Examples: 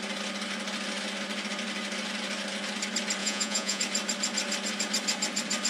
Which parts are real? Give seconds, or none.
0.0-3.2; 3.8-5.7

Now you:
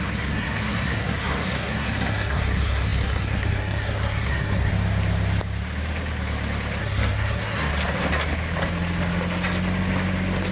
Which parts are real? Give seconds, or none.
4.7-6.8; 7.7-10.5